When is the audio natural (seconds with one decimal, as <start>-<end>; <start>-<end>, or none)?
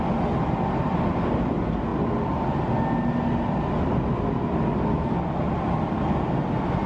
0.0-6.9